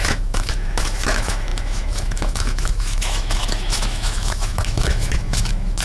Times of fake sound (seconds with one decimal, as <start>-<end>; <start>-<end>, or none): 0.0-5.8